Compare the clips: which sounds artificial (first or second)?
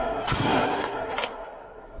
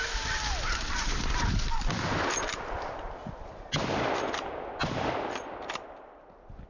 first